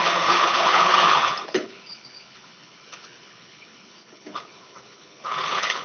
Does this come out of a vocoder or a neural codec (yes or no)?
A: yes